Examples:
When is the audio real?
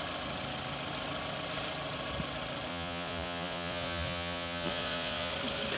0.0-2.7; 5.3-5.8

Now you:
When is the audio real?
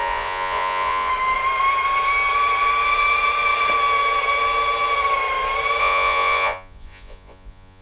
1.1-5.8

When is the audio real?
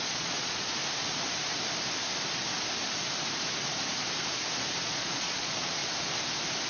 0.8-4.8; 5.8-6.7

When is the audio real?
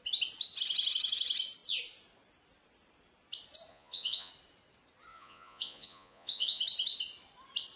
0.0-3.7; 4.3-5.1; 6.6-7.8